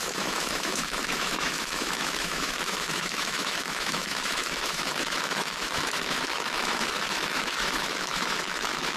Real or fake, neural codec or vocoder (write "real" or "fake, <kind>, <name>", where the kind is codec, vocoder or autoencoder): fake, autoencoder, DAC-VAE